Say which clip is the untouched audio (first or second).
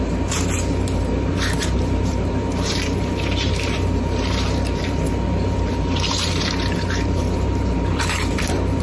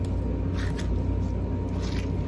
second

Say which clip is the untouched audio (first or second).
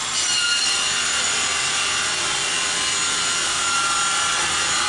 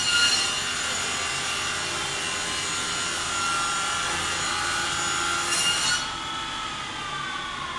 second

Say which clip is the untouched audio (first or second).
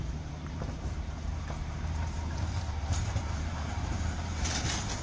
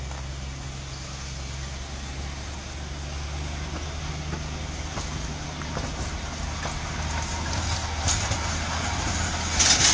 second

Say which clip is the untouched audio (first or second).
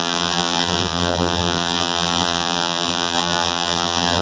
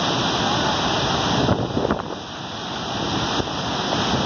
second